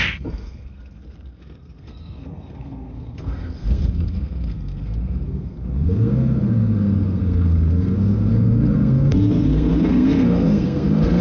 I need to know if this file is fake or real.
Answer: fake